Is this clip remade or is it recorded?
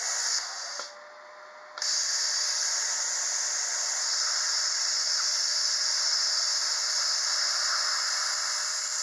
recorded